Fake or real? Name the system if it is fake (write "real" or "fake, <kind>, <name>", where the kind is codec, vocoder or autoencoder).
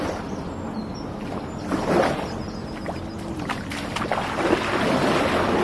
real